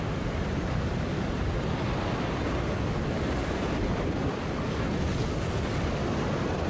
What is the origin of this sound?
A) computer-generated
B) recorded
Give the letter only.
B